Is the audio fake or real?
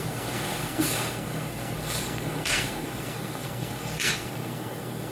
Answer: fake